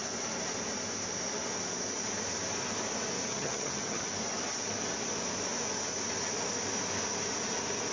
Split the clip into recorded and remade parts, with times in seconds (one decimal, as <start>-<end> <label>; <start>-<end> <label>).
0.0-3.3 recorded; 3.3-4.1 remade; 4.1-7.9 recorded